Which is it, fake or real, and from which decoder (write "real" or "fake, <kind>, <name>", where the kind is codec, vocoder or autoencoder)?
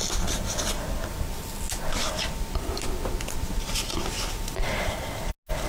real